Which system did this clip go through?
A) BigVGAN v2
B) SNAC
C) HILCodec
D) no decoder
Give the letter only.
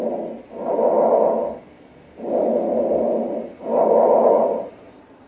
D